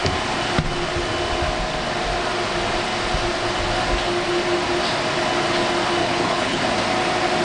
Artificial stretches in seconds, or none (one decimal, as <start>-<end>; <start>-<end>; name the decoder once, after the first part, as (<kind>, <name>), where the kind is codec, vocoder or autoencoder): 6.0-6.6 (codec, HILCodec)